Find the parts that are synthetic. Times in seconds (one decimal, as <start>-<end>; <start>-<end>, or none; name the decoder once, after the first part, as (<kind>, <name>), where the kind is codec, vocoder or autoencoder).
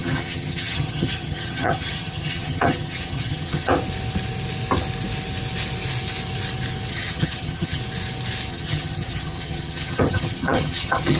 0.0-3.7 (vocoder, HiFi-GAN); 6.9-7.8; 8.5-11.2